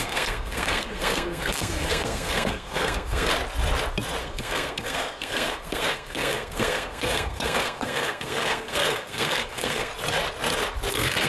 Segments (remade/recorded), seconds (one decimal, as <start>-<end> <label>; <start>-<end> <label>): 0.0-3.3 remade; 3.3-4.2 recorded; 4.2-9.9 remade; 9.9-10.9 recorded; 10.9-11.3 remade